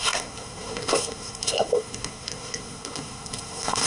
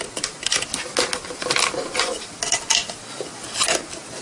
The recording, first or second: second